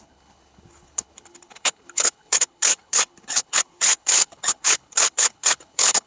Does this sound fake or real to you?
fake